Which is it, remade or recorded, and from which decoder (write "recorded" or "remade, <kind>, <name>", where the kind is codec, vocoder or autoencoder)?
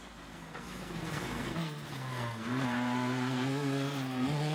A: remade, codec, SNAC